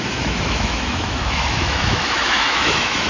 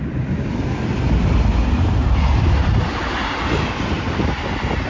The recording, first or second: second